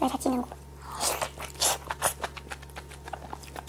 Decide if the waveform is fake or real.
real